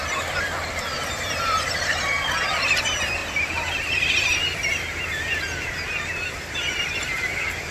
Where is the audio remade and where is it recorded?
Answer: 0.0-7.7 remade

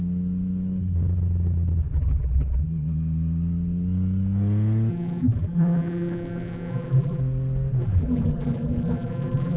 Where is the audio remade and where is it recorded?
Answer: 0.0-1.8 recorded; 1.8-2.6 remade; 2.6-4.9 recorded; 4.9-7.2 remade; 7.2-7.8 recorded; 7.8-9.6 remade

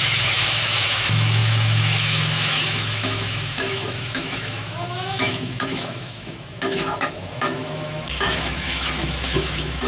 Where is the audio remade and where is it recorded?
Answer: 0.0-9.9 remade

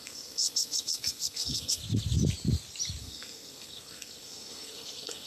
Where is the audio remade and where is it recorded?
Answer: 0.0-1.8 remade; 1.8-3.0 recorded; 3.0-5.3 remade